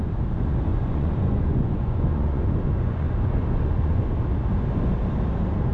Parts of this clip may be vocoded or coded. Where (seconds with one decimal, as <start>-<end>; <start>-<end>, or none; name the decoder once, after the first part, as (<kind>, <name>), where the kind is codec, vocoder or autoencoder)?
0.7-4.1 (vocoder, Vocos)